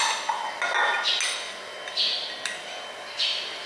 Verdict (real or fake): real